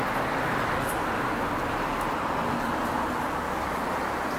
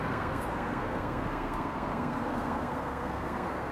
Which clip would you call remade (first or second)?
second